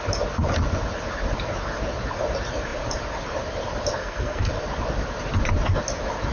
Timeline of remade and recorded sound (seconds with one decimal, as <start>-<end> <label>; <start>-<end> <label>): 0.0-4.0 recorded; 4.0-4.5 remade; 4.5-6.3 recorded